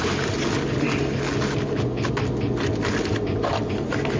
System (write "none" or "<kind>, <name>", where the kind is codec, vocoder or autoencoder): none